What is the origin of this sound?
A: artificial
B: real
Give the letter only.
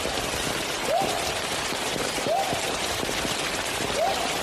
A